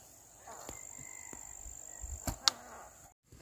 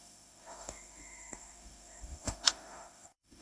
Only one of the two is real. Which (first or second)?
first